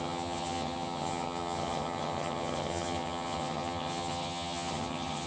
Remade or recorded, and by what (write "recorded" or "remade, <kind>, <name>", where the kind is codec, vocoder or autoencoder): remade, vocoder, HiFi-GAN